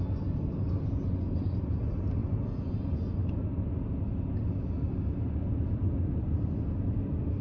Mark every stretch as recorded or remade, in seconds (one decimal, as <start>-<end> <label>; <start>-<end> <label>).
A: 0.0-7.4 recorded